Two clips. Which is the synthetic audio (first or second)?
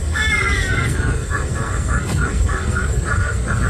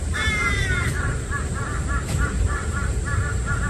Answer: first